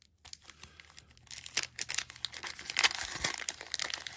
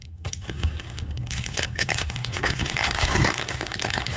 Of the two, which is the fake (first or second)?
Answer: second